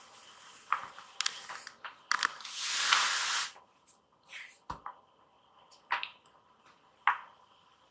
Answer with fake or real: real